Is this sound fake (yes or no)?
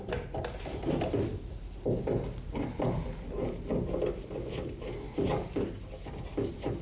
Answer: no